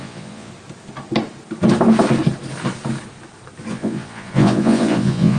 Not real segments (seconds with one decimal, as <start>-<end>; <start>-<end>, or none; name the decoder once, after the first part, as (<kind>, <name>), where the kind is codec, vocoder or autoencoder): 0.0-0.5 (vocoder, Vocos); 3.7-5.4